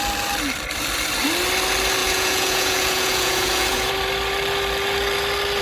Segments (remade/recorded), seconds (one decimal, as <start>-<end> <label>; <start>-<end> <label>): 0.0-2.0 recorded; 2.0-3.9 remade; 3.9-5.6 recorded